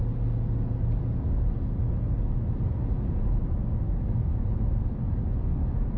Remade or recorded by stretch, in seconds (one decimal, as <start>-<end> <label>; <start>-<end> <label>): 0.0-6.0 recorded